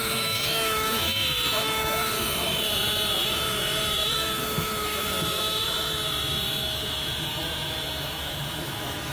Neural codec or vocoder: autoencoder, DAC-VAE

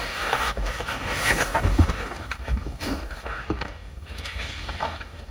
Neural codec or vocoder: codec, DAC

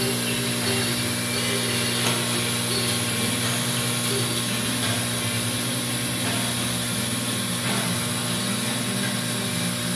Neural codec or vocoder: none